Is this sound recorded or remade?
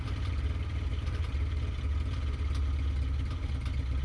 recorded